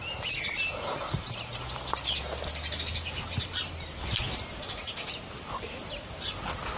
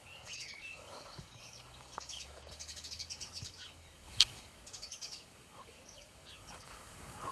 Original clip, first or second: first